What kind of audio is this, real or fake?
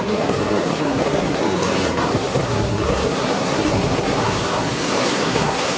fake